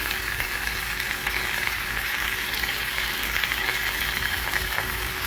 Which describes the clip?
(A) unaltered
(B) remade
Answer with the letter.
B